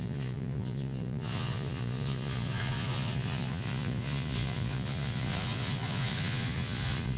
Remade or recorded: remade